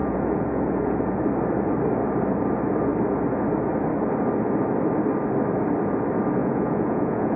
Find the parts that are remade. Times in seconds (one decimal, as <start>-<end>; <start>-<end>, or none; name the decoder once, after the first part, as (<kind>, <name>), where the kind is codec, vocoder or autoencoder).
0.0-1.2 (vocoder, Vocos); 6.4-7.4